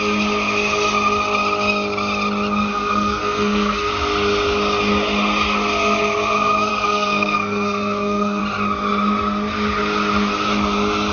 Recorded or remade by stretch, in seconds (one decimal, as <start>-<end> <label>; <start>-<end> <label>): 0.0-2.7 recorded; 2.7-3.9 remade; 3.9-6.7 recorded; 6.7-8.4 remade; 8.4-11.1 recorded